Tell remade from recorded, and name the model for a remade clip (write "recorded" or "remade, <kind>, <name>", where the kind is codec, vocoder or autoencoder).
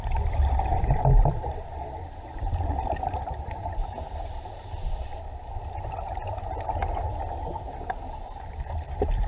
recorded